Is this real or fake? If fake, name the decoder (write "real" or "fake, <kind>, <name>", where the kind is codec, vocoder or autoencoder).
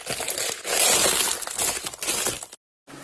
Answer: real